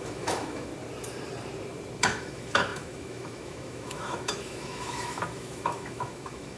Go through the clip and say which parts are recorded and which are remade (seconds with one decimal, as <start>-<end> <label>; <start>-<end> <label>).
0.0-0.7 remade; 0.7-2.0 recorded; 2.0-6.6 remade